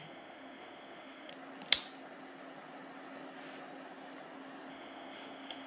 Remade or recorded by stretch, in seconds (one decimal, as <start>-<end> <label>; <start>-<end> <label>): 0.0-1.3 remade; 1.3-4.7 recorded; 4.7-5.7 remade